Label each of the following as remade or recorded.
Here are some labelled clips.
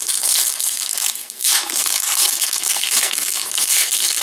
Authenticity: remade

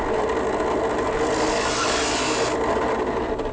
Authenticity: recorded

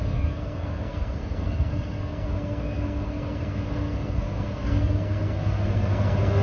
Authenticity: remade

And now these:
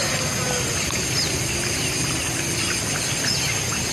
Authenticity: recorded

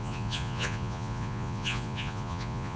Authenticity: remade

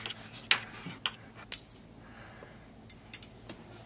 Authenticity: recorded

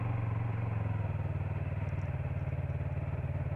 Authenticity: recorded